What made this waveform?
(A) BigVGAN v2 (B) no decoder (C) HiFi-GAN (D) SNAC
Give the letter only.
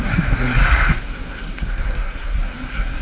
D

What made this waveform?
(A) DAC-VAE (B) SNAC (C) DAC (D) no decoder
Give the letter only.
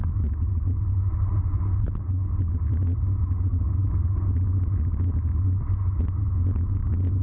D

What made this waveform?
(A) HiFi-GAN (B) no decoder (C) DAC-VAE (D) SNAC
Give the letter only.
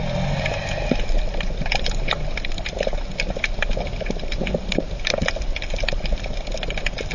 B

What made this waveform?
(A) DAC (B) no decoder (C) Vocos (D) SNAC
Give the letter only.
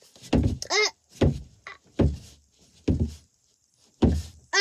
B